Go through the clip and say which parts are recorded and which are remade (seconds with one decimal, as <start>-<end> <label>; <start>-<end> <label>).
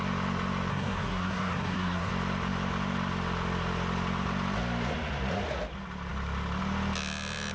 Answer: 0.0-0.7 recorded; 0.7-2.1 remade; 2.1-7.5 recorded